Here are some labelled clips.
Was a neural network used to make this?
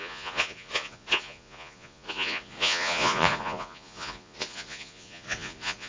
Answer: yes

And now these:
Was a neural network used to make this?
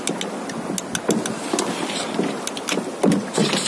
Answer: no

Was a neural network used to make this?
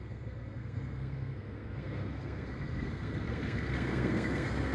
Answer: yes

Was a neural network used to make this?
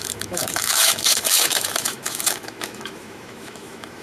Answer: yes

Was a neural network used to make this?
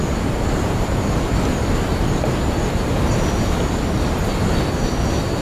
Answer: no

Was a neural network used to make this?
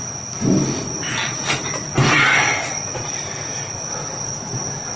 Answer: no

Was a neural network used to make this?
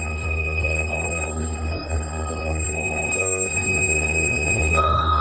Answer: yes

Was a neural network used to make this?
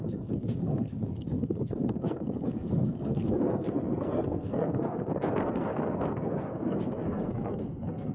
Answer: yes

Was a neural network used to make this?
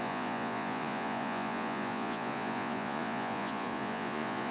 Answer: yes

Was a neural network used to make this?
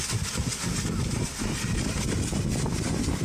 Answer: no